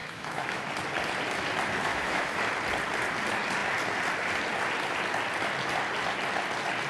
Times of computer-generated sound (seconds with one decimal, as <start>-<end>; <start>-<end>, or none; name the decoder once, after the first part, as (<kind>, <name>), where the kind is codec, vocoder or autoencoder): 0.0-0.7 (autoencoder, DAC-VAE); 1.9-2.4